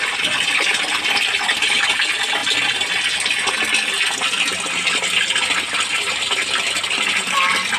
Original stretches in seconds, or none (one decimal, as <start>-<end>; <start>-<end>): 0.0-7.8